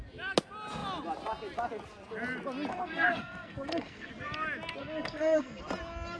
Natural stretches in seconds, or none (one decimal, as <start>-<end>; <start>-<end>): 0.0-2.7; 4.1-4.8; 5.6-6.2